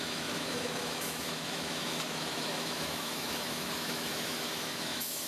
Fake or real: fake